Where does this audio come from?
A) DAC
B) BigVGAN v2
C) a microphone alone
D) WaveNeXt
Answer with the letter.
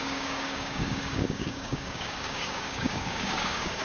A